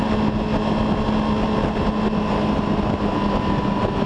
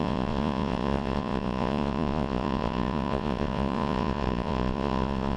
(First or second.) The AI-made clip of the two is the second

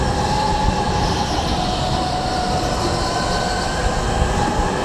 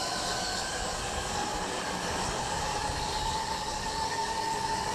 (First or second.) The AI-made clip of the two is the second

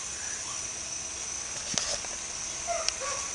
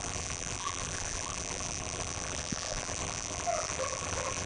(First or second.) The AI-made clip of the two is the second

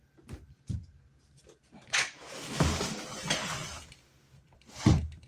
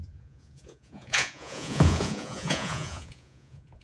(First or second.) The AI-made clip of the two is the second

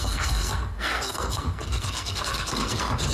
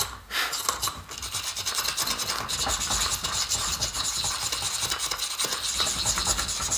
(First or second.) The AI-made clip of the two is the first